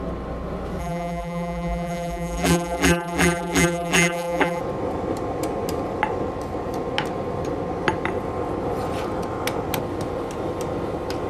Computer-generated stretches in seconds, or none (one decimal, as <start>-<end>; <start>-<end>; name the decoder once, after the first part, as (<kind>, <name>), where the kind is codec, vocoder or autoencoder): 0.8-4.6 (vocoder, BigVGAN v2)